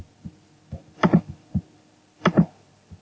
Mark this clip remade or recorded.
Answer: recorded